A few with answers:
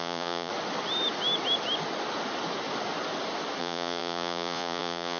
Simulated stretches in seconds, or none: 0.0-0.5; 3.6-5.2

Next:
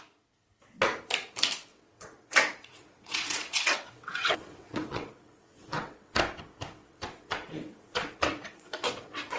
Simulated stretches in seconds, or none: 1.7-6.1; 6.8-9.4

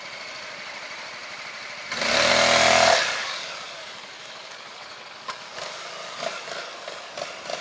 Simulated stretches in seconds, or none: 3.2-7.1

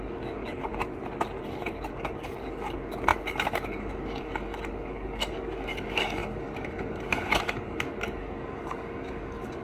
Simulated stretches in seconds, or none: 0.0-0.7; 1.4-9.6

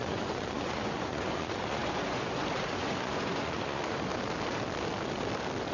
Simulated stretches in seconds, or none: 0.0-4.1

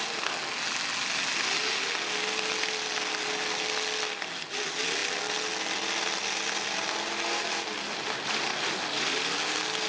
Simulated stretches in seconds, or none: none

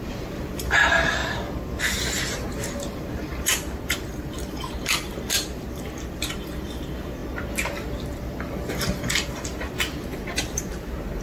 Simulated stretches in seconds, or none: 0.0-1.2; 1.8-7.2; 8.7-11.2

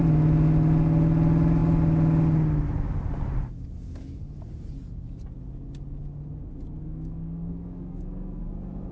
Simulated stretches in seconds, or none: 6.8-8.5